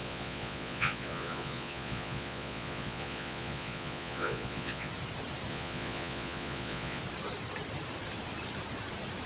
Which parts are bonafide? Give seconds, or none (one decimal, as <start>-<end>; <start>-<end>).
4.9-5.5; 7.0-9.3